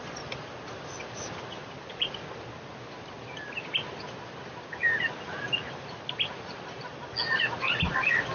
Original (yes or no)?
yes